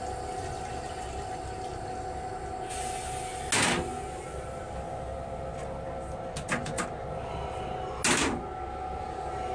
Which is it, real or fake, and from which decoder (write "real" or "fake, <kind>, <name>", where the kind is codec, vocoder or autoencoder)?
real